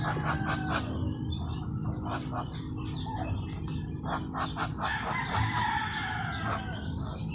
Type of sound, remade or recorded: recorded